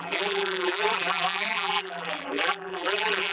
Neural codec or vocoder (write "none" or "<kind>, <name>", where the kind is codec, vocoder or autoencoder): vocoder, BigVGAN v2